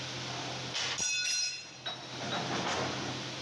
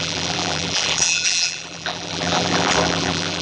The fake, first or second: second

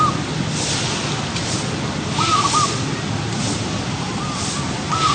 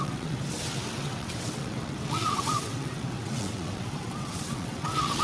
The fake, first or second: second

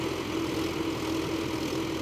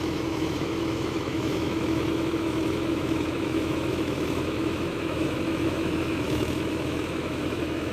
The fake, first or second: second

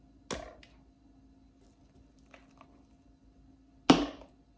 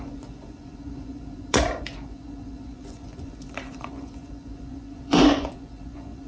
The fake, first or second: second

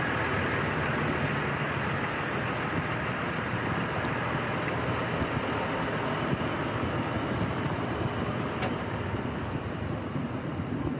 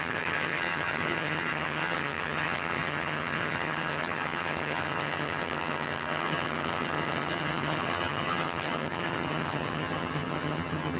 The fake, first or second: second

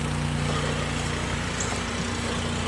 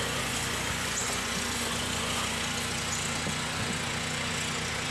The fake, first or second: second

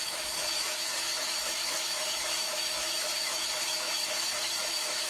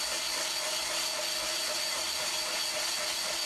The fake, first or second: first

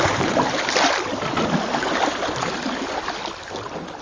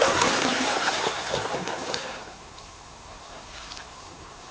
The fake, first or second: second